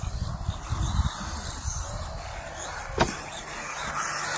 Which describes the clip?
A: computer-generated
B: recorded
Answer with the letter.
B